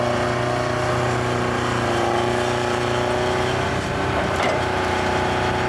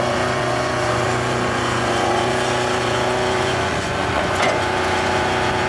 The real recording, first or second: first